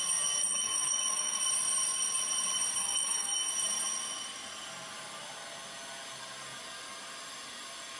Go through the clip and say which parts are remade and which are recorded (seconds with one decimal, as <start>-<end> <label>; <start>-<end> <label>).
0.0-0.4 recorded; 0.4-1.4 remade; 1.4-2.8 recorded; 2.8-3.5 remade; 3.5-8.0 recorded